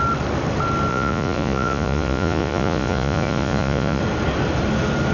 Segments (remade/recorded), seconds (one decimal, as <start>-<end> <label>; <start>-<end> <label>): 0.0-0.9 recorded; 0.9-4.0 remade; 4.0-5.1 recorded